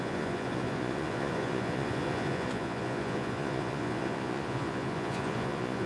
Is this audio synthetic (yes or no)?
yes